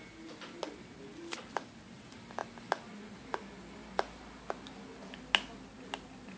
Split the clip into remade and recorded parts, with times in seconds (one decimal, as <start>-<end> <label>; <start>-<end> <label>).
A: 0.0-6.4 recorded